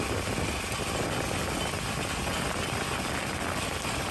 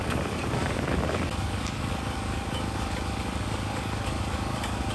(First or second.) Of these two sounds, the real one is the first